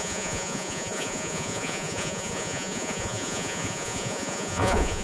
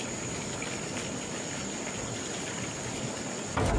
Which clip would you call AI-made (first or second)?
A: first